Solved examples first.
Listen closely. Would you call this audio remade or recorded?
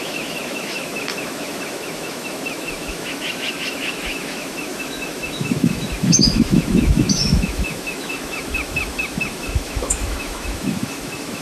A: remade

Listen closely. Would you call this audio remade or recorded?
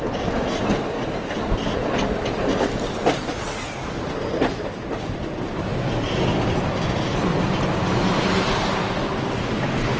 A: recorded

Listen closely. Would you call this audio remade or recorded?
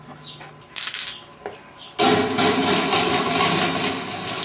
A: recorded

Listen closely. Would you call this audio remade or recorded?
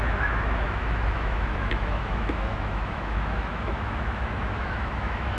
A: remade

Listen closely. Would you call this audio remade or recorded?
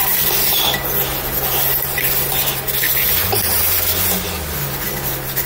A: recorded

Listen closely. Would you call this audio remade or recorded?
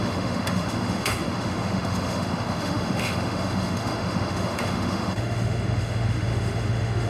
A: remade